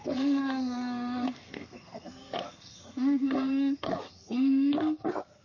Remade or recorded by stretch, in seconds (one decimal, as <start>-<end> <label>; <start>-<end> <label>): 0.0-5.4 remade